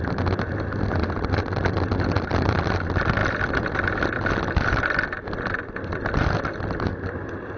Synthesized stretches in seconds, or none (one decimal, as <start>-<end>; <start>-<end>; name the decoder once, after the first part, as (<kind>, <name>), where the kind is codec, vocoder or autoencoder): none